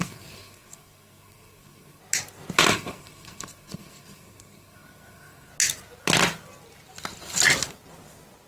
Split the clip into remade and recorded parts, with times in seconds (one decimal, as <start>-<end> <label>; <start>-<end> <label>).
0.0-2.0 remade; 2.0-2.7 recorded; 2.7-5.5 remade; 5.5-8.5 recorded